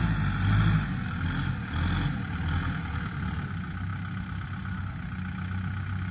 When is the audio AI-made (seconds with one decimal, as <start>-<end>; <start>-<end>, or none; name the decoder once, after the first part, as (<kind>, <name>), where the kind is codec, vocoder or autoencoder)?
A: none